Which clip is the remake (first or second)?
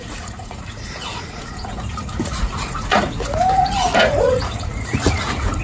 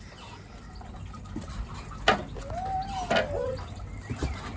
first